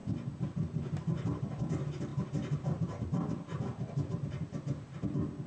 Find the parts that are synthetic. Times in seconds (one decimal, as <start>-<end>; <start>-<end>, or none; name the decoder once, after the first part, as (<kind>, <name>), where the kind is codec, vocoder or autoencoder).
none